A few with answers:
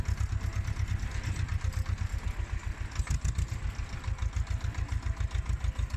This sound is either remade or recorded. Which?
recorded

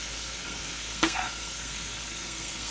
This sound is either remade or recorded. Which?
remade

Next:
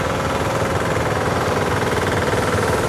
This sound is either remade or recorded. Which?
recorded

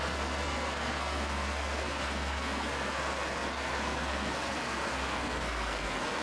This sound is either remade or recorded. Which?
remade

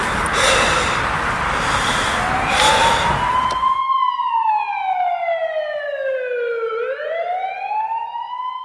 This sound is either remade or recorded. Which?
recorded